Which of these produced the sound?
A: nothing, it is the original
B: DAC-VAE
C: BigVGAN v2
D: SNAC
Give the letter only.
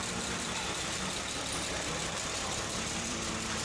C